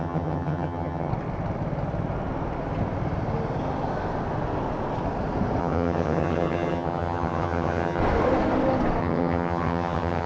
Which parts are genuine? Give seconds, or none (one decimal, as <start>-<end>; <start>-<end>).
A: 1.1-5.6; 8.0-9.0